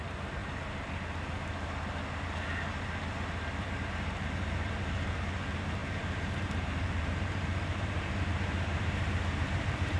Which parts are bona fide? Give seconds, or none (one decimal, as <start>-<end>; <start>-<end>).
0.4-3.5